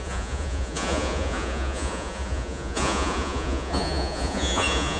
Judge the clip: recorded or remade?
remade